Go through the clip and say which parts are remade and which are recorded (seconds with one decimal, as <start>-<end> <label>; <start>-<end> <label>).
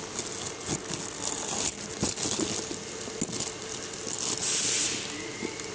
0.0-5.7 recorded